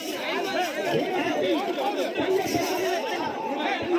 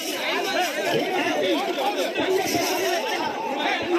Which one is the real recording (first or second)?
first